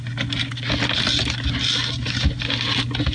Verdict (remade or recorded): recorded